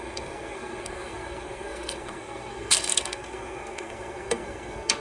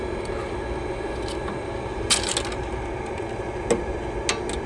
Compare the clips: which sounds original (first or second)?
second